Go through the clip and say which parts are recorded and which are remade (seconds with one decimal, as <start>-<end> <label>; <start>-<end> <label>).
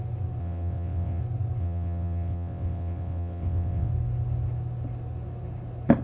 0.0-0.4 recorded; 0.4-1.2 remade; 1.2-1.6 recorded; 1.6-3.9 remade; 3.9-6.0 recorded